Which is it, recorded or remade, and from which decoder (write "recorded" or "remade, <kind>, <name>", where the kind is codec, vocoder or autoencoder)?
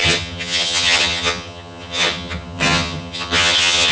remade, vocoder, HiFi-GAN